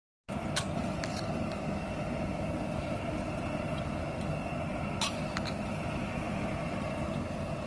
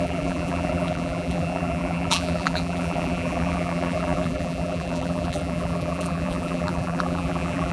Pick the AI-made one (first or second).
second